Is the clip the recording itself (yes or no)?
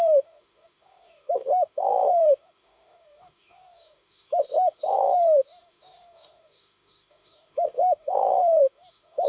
no